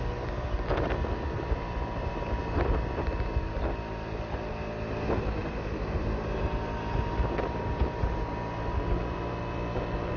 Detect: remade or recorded recorded